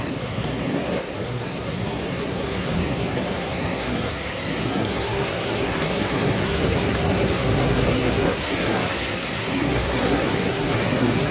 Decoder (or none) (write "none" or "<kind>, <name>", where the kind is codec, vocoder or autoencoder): codec, SNAC